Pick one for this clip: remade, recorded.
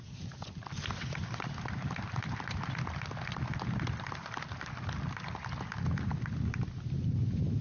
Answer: recorded